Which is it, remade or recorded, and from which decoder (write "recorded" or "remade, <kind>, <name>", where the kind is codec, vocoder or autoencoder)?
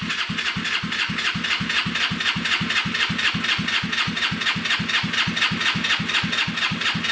recorded